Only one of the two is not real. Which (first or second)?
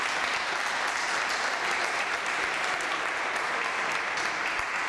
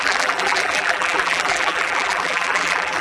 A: second